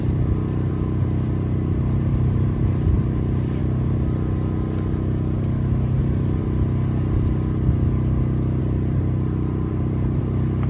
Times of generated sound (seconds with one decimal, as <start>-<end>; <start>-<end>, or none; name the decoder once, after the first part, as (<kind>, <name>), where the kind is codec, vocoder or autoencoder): 0.0-3.6 (vocoder, BigVGAN v2); 6.0-6.4; 8.6-10.7